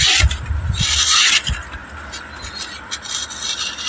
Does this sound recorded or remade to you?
recorded